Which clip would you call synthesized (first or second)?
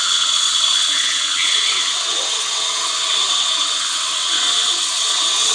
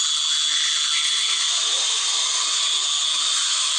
first